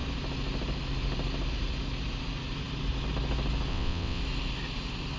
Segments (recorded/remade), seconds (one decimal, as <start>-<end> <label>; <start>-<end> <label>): 0.0-3.7 recorded; 3.7-4.2 remade; 4.2-5.2 recorded